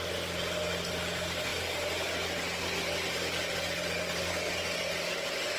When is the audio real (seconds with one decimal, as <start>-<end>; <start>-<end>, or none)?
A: 0.0-5.6